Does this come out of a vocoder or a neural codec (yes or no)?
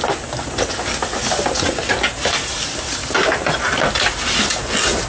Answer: no